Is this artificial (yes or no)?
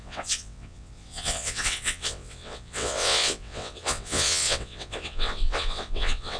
yes